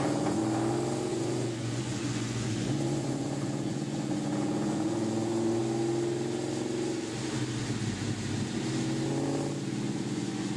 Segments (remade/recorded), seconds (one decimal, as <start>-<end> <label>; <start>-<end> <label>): 0.0-0.4 remade; 0.4-1.1 recorded; 1.1-5.6 remade; 5.6-9.7 recorded; 9.7-10.6 remade